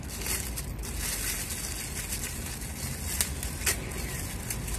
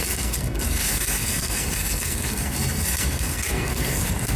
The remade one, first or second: second